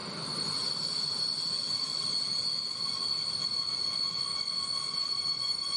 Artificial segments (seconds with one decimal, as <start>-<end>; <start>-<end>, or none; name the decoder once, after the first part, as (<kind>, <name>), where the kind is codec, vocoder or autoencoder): 0.0-1.2 (vocoder, BigVGAN v2)